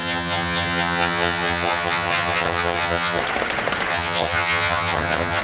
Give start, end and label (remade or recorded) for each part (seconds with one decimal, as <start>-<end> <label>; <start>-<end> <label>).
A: 0.0-3.2 remade; 3.2-3.9 recorded; 3.9-5.4 remade